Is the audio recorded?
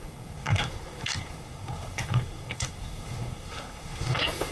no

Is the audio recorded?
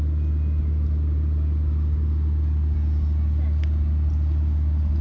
yes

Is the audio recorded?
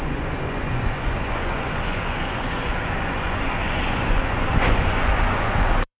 no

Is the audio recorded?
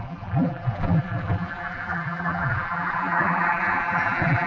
no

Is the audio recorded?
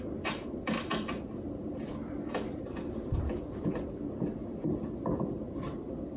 no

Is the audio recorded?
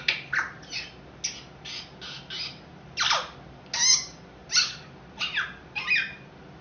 yes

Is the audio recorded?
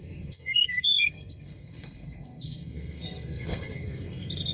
no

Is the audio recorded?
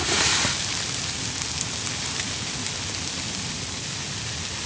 yes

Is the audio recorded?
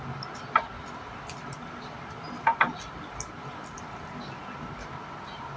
yes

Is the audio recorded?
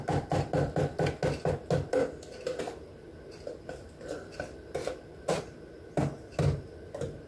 yes